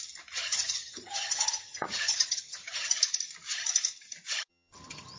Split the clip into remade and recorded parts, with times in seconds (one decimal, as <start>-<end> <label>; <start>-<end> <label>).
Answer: 0.0-0.4 recorded; 0.4-2.9 remade; 2.9-4.5 recorded; 4.5-5.2 remade